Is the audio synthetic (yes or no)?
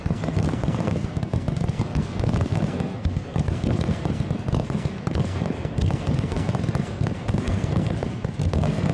yes